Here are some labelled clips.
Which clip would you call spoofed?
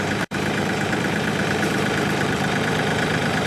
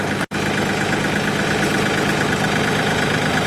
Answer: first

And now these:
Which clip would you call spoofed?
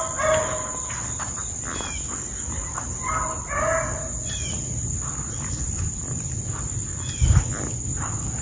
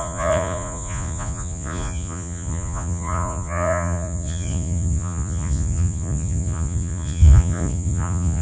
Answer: second